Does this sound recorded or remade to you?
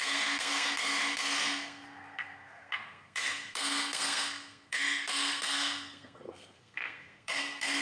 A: remade